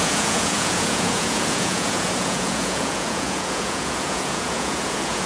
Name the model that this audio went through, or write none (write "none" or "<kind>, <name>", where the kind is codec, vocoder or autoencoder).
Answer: vocoder, Vocos